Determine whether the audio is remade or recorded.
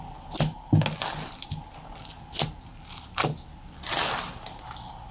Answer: recorded